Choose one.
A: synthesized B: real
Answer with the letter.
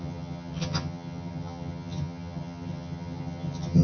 A